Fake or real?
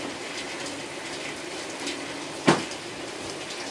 real